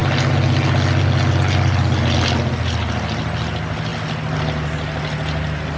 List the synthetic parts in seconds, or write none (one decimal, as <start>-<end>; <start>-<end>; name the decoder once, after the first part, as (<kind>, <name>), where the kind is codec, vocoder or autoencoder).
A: none